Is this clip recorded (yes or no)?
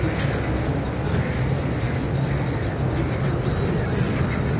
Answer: yes